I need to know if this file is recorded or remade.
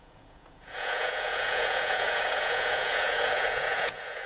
remade